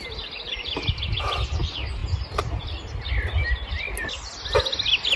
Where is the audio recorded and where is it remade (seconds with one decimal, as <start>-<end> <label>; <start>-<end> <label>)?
0.0-5.2 recorded